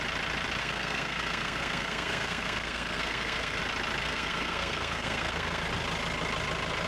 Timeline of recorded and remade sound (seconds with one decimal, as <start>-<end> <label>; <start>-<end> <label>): 0.0-0.6 recorded; 0.6-3.6 remade; 3.6-4.0 recorded; 4.0-5.6 remade; 5.6-6.9 recorded